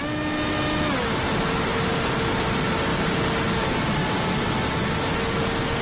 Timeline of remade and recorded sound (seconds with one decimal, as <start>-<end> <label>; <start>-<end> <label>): 0.0-5.8 recorded